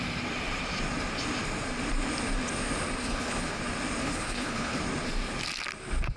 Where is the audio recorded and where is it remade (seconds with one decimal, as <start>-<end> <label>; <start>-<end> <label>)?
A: 0.0-3.0 recorded; 3.0-3.6 remade; 3.6-4.0 recorded; 4.0-4.8 remade; 4.8-6.2 recorded